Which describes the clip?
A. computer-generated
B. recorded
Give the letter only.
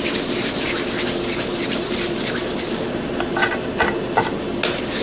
B